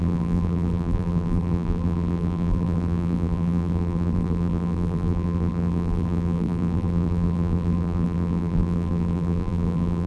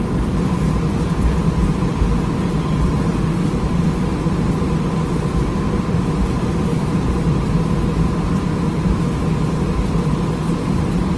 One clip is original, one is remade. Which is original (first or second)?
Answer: second